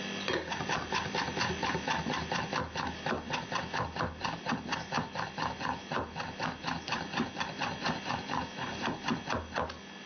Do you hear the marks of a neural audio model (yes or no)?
no